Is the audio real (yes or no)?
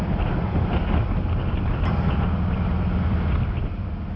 yes